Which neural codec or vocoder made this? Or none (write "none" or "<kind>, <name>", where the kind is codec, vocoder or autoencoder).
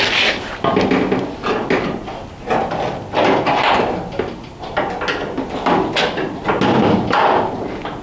none